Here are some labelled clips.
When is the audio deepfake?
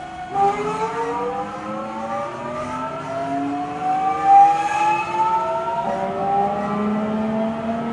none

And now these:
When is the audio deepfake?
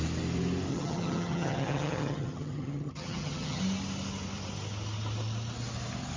0.7-3.6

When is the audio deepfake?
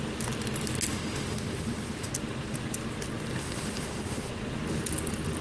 0.9-2.1; 3.4-4.3